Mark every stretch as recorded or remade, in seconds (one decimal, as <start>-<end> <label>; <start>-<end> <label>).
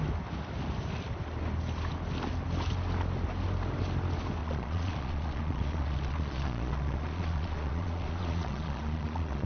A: 0.0-4.4 recorded; 4.4-9.5 remade